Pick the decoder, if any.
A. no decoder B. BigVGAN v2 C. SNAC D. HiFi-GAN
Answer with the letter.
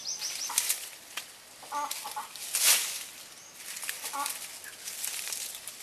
A